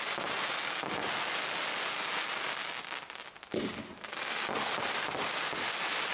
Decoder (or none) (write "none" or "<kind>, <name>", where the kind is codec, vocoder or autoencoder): none